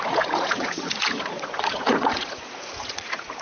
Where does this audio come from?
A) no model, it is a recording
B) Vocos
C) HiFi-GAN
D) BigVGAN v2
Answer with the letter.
B